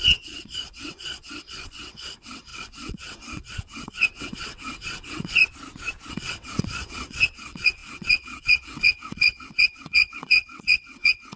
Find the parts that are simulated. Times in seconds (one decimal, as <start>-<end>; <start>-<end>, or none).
0.0-5.4; 6.1-11.4